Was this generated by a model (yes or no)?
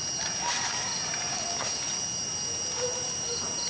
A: no